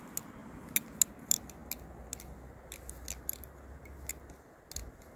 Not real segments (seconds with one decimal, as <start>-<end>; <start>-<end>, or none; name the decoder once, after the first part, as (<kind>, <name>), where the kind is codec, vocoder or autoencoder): none